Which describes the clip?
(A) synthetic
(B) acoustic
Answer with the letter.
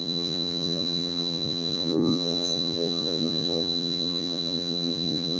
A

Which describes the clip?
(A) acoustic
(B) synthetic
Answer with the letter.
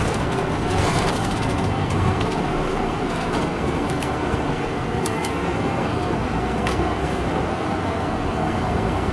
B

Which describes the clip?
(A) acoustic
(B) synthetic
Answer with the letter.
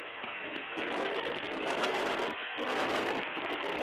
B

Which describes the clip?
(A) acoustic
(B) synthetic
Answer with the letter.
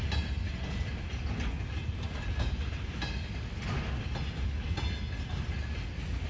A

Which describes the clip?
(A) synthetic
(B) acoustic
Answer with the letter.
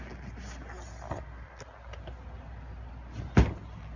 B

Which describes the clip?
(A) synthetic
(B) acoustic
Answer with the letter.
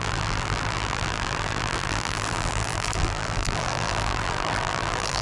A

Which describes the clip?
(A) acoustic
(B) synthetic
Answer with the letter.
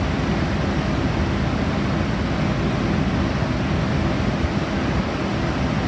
A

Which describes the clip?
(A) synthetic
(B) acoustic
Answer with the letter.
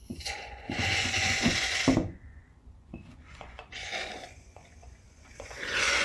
A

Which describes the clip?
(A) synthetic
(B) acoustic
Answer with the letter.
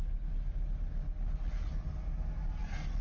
B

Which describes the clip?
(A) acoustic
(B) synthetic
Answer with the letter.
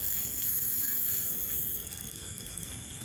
B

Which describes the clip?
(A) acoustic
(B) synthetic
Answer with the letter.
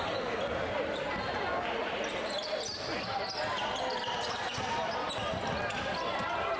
A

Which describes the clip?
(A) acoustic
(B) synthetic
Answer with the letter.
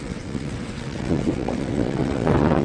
B